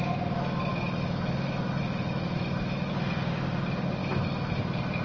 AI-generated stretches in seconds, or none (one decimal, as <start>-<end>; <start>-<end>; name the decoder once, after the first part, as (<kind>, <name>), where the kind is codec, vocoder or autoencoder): 0.7-2.9 (autoencoder, DAC-VAE); 4.0-4.6